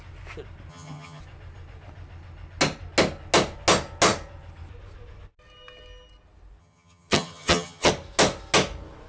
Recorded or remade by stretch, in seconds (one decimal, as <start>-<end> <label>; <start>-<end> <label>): 0.0-0.7 recorded; 0.7-1.2 remade; 1.2-6.6 recorded; 6.6-7.9 remade; 7.9-9.1 recorded